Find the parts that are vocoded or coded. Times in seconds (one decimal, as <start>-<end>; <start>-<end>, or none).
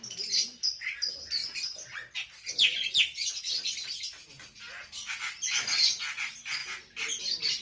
none